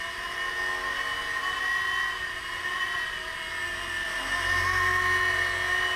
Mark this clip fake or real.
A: real